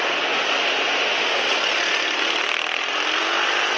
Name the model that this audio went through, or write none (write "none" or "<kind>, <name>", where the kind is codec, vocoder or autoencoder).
none